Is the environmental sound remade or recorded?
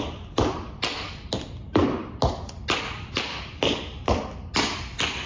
recorded